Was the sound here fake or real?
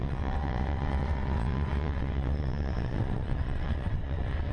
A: fake